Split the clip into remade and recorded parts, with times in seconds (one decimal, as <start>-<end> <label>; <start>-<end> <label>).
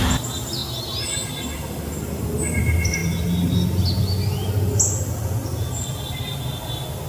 0.0-0.6 remade; 0.6-2.4 recorded; 2.4-3.0 remade; 3.0-7.1 recorded